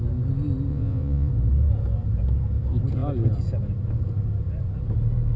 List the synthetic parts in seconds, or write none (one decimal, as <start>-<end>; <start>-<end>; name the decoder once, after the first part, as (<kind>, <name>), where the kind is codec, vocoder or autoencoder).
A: 0.7-1.3 (vocoder, Vocos)